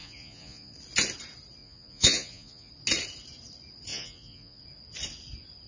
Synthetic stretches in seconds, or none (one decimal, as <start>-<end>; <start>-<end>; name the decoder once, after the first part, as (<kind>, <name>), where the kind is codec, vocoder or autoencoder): 0.0-0.7 (vocoder, Vocos); 1.6-2.7; 3.9-4.6